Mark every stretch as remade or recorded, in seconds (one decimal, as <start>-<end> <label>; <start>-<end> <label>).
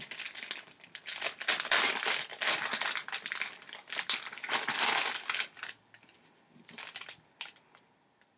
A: 0.0-8.4 recorded